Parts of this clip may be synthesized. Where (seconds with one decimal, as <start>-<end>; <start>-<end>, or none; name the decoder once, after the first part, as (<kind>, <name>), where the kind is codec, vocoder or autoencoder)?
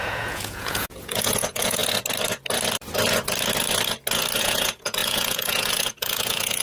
0.0-1.8 (vocoder, Vocos); 4.4-6.6